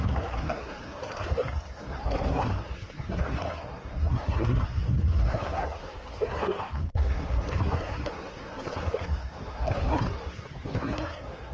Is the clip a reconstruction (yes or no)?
yes